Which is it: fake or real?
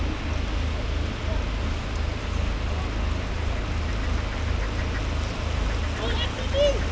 real